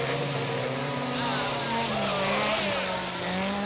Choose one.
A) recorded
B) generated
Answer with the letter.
A